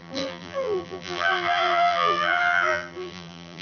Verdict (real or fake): fake